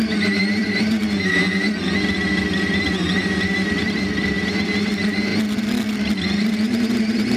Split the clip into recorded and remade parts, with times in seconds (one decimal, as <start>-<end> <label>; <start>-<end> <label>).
0.0-1.3 remade; 1.3-2.5 recorded; 2.5-5.3 remade; 5.3-6.2 recorded; 6.2-7.4 remade